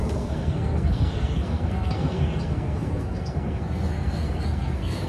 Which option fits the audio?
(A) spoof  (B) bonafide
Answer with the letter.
A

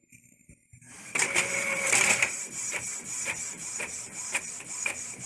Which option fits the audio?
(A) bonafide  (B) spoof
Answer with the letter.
B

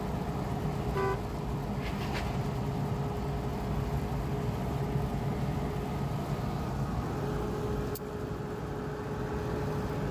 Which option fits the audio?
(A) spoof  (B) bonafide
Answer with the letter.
B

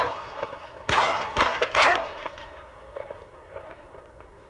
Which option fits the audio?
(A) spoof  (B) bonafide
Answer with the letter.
A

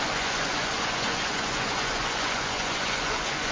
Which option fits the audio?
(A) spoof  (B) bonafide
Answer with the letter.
A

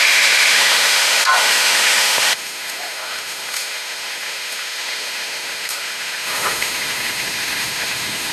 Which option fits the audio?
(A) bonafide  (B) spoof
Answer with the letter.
B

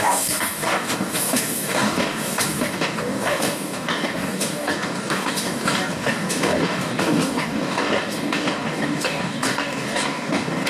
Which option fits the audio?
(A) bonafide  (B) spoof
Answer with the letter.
B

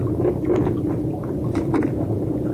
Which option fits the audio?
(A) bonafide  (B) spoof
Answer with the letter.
B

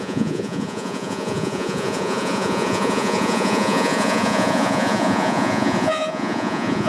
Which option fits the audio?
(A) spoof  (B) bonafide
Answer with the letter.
A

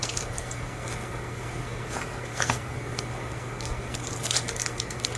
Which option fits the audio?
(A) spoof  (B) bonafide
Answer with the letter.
A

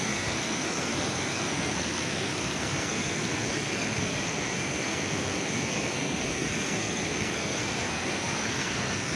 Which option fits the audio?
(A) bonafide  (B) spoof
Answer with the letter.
B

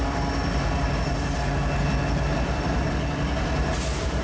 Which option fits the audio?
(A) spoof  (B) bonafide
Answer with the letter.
B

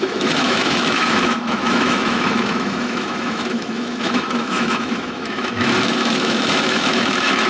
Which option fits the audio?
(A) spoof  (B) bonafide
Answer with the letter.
A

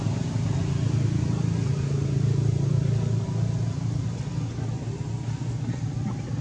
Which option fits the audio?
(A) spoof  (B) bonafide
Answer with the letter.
B